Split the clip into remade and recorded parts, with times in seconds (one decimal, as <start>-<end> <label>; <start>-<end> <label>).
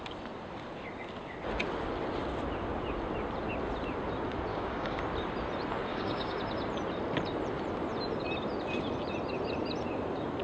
0.0-4.5 recorded; 4.5-5.0 remade; 5.0-5.9 recorded; 5.9-6.4 remade; 6.4-10.4 recorded